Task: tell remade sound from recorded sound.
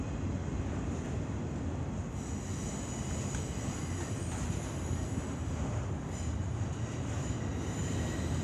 recorded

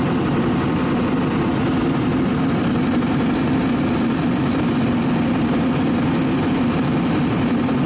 recorded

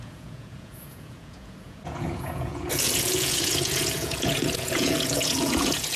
remade